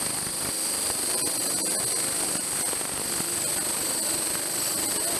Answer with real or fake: real